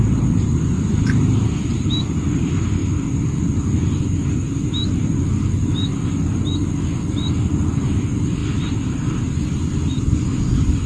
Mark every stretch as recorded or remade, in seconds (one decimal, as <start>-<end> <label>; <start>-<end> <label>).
0.0-2.8 remade; 2.8-7.7 recorded; 7.7-8.4 remade; 8.4-9.5 recorded; 9.5-10.9 remade